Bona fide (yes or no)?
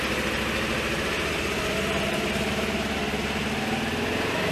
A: yes